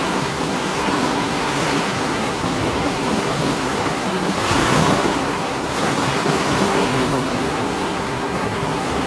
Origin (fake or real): fake